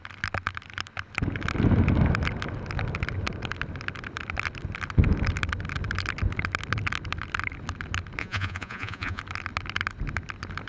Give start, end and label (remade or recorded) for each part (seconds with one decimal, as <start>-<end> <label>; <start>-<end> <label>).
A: 0.0-8.2 recorded; 8.2-9.2 remade; 9.2-10.7 recorded